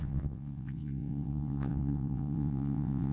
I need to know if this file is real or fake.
fake